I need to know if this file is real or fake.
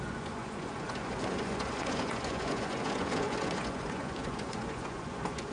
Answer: fake